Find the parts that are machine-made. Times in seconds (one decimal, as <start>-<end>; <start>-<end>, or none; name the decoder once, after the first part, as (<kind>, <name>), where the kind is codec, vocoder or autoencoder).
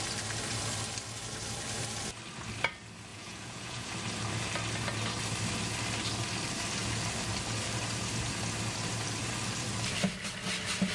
3.1-3.9 (vocoder, Vocos)